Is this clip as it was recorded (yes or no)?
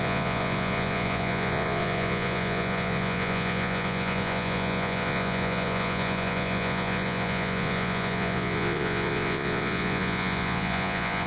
no